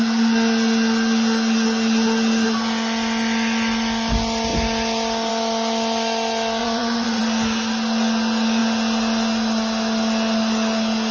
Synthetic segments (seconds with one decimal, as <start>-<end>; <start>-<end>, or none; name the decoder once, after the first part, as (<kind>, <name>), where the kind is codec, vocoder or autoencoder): 6.6-7.2 (vocoder, Vocos)